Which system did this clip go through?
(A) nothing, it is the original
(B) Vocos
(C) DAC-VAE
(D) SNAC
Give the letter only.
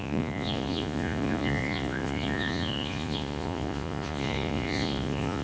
B